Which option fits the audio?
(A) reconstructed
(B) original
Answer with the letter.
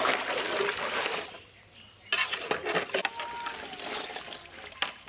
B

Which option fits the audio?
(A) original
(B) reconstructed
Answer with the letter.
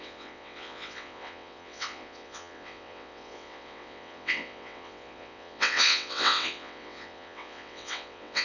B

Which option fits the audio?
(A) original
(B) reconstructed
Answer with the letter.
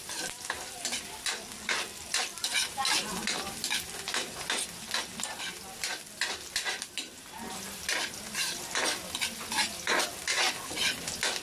B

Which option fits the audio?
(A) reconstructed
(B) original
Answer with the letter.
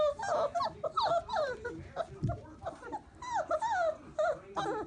B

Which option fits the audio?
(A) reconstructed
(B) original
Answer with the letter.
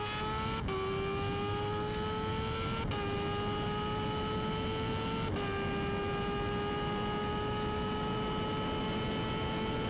B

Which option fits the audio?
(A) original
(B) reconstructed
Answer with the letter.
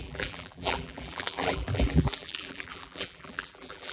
B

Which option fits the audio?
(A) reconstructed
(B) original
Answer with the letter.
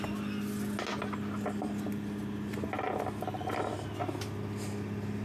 B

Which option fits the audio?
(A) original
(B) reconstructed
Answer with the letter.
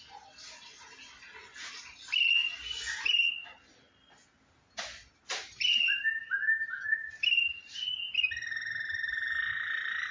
A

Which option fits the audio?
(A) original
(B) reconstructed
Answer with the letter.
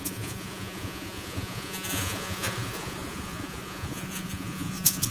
B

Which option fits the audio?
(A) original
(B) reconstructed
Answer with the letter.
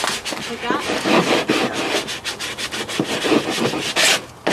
A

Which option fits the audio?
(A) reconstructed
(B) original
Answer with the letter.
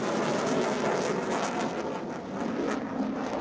B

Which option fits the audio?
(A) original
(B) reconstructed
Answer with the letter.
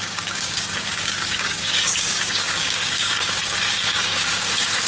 B